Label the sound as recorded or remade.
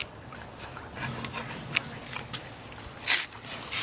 recorded